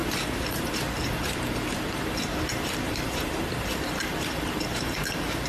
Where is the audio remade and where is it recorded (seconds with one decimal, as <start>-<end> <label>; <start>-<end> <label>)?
0.0-5.5 remade